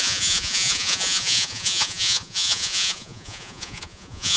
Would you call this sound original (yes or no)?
no